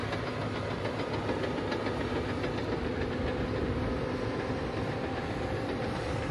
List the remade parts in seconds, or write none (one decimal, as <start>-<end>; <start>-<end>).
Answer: none